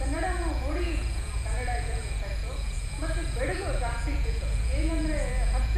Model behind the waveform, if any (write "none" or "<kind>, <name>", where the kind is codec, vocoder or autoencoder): vocoder, Vocos